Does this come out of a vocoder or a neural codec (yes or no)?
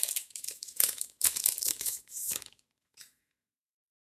yes